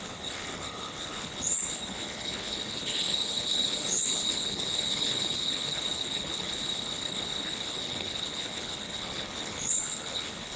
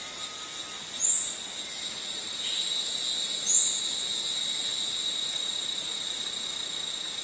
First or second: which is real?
second